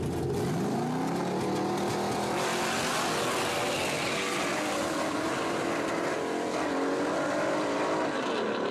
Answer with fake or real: real